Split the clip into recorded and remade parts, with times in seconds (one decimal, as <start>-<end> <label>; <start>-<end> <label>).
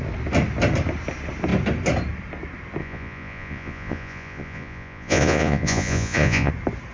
0.0-2.8 recorded; 2.8-6.5 remade; 6.5-6.9 recorded